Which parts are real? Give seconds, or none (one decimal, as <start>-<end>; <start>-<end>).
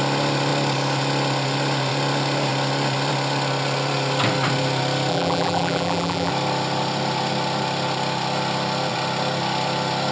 0.0-5.1; 6.3-10.1